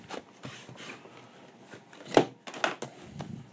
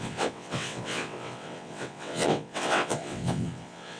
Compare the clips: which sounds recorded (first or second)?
first